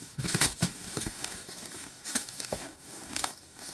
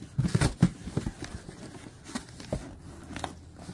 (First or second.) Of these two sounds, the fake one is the first